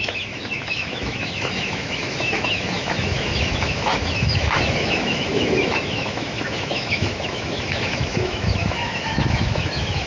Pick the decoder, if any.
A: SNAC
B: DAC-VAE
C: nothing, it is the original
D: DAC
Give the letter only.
B